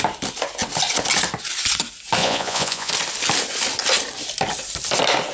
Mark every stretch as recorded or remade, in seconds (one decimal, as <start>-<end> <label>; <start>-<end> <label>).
0.0-2.2 recorded; 2.2-2.9 remade; 2.9-5.3 recorded